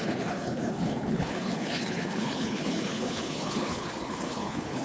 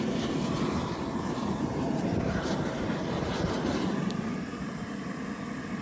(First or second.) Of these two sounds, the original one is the second